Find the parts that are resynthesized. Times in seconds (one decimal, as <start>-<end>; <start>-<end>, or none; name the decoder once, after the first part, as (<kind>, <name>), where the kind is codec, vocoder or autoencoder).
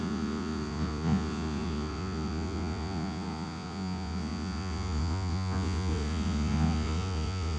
0.0-7.6 (vocoder, Vocos)